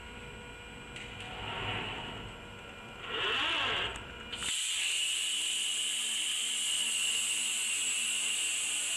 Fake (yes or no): no